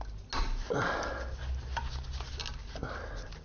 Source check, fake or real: real